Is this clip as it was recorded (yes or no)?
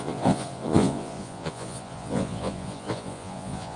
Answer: no